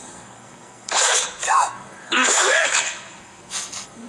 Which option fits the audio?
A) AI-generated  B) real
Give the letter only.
A